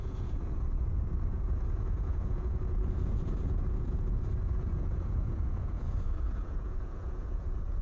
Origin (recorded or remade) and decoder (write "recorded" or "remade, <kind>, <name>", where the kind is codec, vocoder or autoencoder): remade, vocoder, Vocos